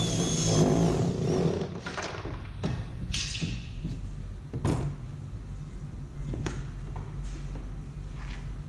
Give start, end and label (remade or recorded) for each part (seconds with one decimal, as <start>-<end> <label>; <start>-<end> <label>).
0.0-2.9 recorded; 2.9-3.9 remade; 3.9-6.1 recorded; 6.1-6.7 remade; 6.7-8.7 recorded